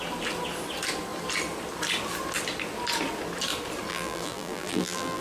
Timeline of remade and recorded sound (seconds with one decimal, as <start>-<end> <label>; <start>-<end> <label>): 0.0-3.9 recorded; 3.9-5.2 remade